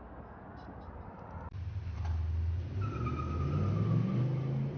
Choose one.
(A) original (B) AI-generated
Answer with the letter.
A